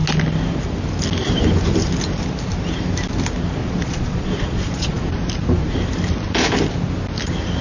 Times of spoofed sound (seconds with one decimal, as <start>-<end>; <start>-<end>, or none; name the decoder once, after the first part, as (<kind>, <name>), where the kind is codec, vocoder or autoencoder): 3.6-5.3 (vocoder, Vocos)